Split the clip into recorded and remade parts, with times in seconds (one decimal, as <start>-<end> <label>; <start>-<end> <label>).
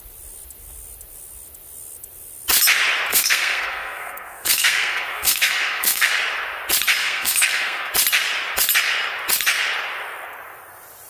0.0-3.1 recorded; 3.1-6.1 remade; 6.1-7.0 recorded; 7.0-7.9 remade; 7.9-11.1 recorded